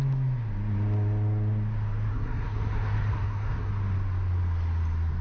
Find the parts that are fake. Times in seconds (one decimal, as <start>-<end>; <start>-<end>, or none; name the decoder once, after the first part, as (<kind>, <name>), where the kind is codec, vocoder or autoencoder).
2.1-3.7 (codec, SNAC)